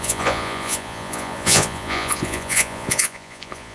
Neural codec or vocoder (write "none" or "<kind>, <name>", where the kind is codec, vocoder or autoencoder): vocoder, Vocos